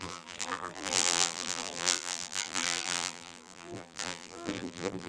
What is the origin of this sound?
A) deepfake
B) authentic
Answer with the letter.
A